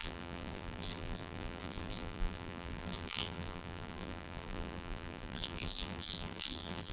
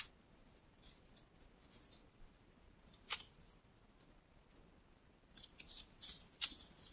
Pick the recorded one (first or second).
second